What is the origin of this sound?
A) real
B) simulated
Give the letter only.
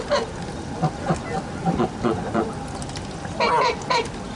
A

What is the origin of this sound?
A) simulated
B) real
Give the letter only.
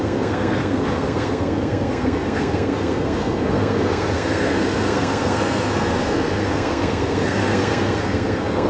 A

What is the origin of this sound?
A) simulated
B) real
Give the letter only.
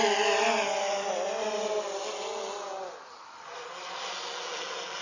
B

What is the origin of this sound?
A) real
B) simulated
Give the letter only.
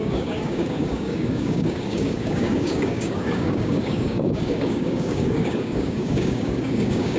B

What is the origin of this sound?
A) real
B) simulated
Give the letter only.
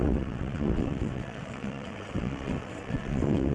B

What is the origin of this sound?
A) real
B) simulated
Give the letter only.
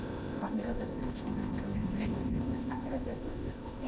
B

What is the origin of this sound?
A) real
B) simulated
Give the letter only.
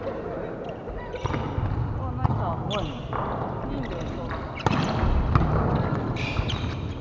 A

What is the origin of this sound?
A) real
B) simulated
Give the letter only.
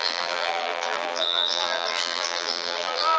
B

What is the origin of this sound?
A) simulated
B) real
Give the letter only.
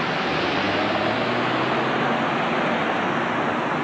B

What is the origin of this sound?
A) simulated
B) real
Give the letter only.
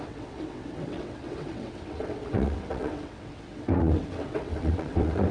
A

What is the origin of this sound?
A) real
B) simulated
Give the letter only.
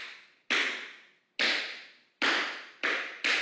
A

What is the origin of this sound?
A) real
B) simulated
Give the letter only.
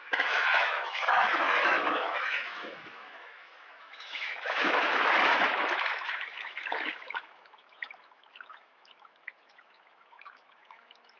B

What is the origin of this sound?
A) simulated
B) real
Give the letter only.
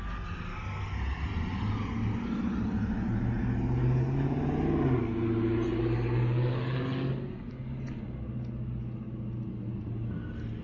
B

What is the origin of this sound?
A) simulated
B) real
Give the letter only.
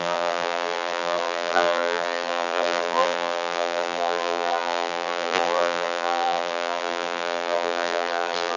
A